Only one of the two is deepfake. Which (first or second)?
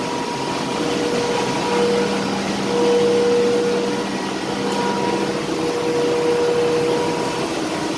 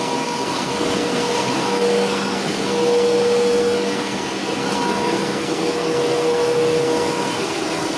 second